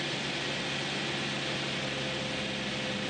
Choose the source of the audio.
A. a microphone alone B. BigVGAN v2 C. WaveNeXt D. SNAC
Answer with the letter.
A